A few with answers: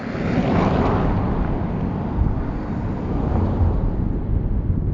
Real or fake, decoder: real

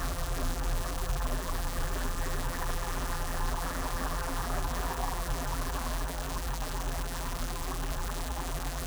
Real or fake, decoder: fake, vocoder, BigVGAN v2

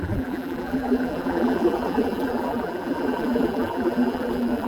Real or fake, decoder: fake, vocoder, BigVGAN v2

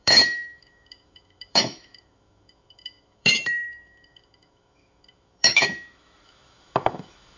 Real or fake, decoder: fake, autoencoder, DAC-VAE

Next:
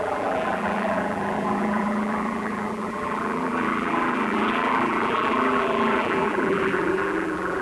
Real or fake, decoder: fake, vocoder, BigVGAN v2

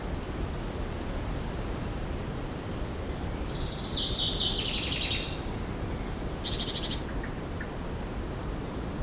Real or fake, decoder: fake, vocoder, BigVGAN v2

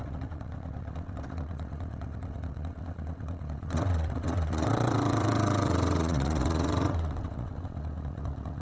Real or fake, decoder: fake, vocoder, WaveNeXt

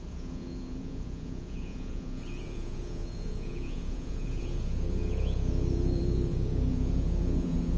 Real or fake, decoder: fake, vocoder, Vocos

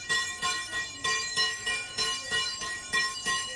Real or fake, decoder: fake, autoencoder, DAC-VAE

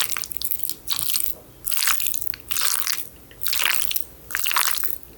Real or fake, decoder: real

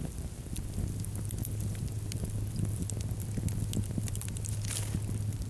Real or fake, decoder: fake, vocoder, BigVGAN v2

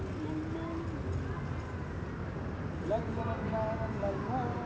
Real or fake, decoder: real